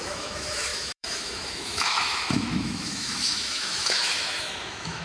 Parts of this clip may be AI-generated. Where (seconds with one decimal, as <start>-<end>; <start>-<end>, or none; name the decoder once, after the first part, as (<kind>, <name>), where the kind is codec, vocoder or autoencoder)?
0.0-5.0 (autoencoder, DAC-VAE)